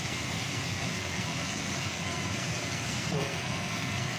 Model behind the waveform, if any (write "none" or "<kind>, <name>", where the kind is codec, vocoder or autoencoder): codec, SNAC